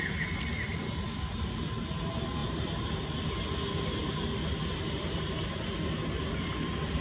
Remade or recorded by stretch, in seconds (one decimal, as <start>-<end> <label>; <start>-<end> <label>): 0.0-2.4 recorded; 2.4-3.3 remade; 3.3-7.0 recorded